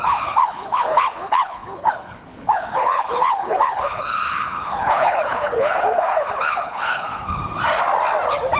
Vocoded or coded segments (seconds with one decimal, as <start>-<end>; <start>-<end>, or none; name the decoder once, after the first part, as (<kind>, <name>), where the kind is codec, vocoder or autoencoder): 0.0-7.4 (codec, HILCodec)